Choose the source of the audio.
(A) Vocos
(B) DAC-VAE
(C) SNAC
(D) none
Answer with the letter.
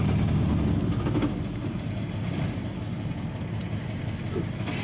D